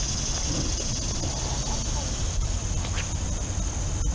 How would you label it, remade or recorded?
recorded